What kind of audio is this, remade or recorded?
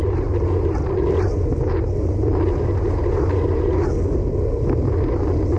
recorded